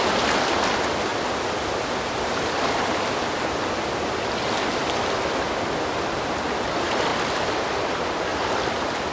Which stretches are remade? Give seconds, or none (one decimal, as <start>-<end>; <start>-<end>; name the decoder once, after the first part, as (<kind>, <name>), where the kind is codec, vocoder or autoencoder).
1.1-3.3 (vocoder, BigVGAN v2); 8.3-9.1